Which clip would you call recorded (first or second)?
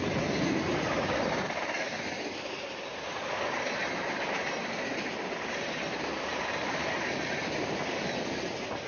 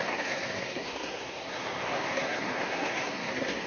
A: first